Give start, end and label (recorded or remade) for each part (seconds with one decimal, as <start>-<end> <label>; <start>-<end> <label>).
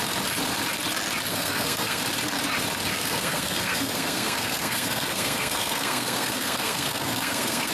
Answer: 0.0-1.3 recorded; 1.3-2.0 remade; 2.0-2.9 recorded; 2.9-7.7 remade